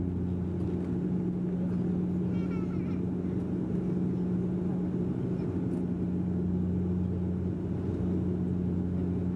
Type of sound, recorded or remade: recorded